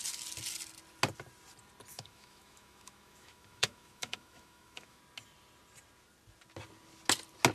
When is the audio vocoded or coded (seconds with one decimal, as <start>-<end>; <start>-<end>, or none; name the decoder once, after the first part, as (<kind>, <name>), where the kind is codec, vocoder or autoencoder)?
1.9-5.0 (autoencoder, DAC-VAE)

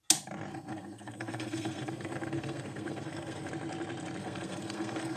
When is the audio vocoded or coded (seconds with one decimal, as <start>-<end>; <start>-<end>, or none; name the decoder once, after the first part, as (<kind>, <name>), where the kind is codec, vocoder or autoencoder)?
0.5-3.5 (codec, SNAC); 4.2-5.2

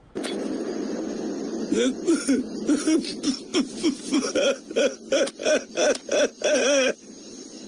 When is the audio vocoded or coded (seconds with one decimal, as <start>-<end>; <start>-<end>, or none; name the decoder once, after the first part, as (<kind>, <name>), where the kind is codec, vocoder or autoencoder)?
none

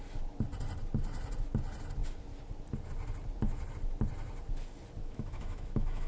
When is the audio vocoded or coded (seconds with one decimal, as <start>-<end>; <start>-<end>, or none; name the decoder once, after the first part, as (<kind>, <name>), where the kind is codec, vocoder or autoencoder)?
5.0-6.1 (autoencoder, DAC-VAE)

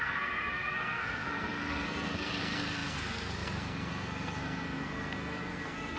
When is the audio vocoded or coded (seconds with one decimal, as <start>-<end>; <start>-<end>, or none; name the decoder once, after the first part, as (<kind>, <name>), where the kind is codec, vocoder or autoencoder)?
0.0-6.0 (codec, SNAC)

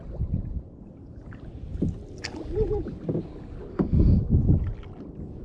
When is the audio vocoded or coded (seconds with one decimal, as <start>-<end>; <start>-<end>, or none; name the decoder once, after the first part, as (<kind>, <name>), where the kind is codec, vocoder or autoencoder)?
3.7-4.2 (autoencoder, DAC-VAE)